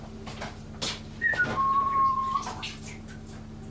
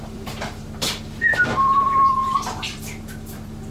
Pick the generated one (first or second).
second